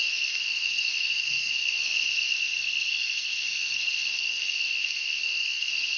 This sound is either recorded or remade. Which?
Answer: remade